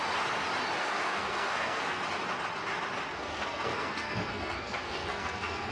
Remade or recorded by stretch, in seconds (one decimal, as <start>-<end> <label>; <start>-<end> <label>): 0.0-0.8 recorded; 0.8-2.0 remade; 2.0-3.1 recorded; 3.1-5.7 remade